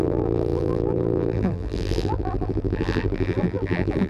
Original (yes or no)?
no